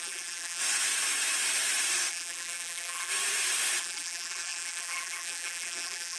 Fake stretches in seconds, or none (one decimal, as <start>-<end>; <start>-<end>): 0.0-0.6; 2.1-3.1; 3.8-6.2